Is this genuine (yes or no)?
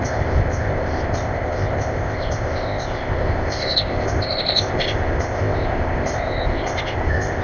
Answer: no